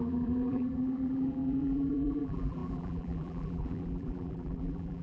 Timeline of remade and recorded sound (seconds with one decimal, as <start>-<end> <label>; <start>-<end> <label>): 0.0-5.0 remade